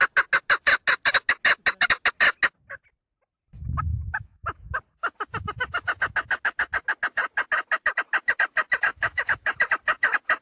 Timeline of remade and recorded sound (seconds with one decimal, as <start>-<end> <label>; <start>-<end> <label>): 0.0-3.9 recorded; 3.9-4.8 remade; 4.8-8.9 recorded; 8.9-9.6 remade; 9.6-10.4 recorded

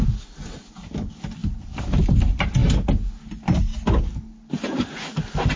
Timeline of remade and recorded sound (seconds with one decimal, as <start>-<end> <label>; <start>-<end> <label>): 0.0-5.6 recorded

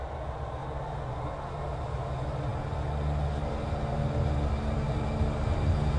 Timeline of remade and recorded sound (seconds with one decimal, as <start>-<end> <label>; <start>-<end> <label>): 0.0-0.6 recorded; 0.6-1.3 remade; 1.3-6.0 recorded

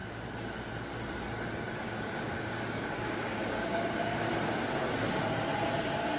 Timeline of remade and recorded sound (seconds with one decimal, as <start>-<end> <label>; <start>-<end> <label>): 0.0-1.8 recorded; 1.8-4.3 remade; 4.3-6.2 recorded

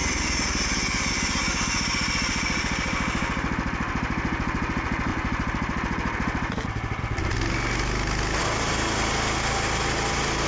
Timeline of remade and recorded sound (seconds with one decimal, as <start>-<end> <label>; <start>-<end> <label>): 0.0-5.1 recorded; 5.1-7.0 remade; 7.0-10.5 recorded